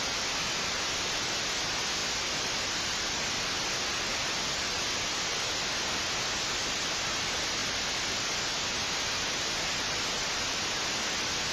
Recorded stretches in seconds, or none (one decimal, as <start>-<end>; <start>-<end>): 0.0-2.0; 3.0-4.1; 4.8-11.5